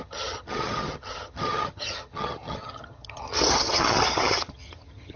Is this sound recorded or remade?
remade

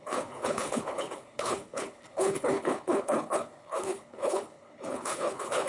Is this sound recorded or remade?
remade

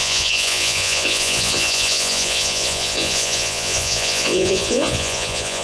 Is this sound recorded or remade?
remade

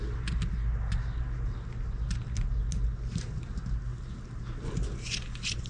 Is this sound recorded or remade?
recorded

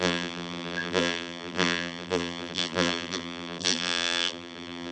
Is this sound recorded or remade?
remade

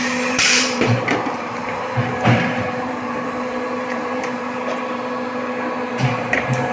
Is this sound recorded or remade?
remade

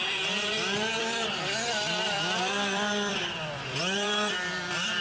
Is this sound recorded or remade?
remade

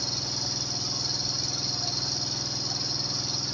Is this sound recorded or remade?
recorded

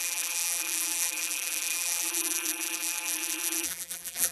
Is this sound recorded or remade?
remade